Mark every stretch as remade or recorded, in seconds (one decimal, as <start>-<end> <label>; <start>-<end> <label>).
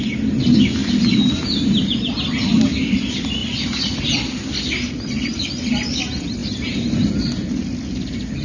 0.0-8.4 recorded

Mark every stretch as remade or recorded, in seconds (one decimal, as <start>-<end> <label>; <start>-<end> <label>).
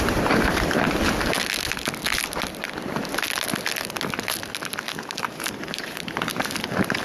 0.0-1.0 remade; 1.0-5.2 recorded; 5.2-6.3 remade; 6.3-7.0 recorded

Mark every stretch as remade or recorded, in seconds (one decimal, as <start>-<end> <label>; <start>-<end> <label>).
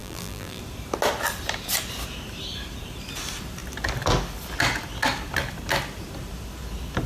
0.0-0.6 remade; 0.6-7.1 recorded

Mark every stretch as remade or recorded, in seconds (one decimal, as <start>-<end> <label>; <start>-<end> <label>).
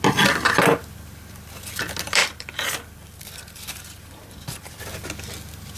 0.0-2.2 recorded; 2.2-4.8 remade; 4.8-5.8 recorded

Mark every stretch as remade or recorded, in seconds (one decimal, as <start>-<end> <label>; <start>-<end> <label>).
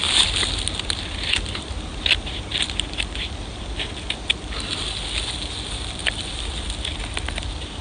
0.0-7.8 recorded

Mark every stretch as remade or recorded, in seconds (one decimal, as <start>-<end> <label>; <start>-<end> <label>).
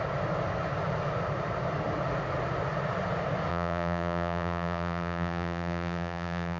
0.0-3.5 recorded; 3.5-6.6 remade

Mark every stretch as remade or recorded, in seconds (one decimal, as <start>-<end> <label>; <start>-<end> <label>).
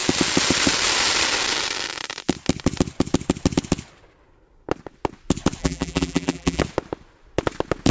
0.0-5.6 recorded; 5.6-6.6 remade; 6.6-7.9 recorded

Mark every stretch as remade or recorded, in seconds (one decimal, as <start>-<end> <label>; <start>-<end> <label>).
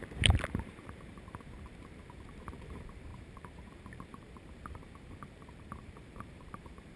0.0-7.0 remade